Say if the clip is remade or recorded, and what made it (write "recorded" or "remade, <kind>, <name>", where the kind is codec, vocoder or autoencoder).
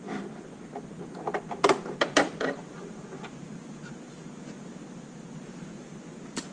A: recorded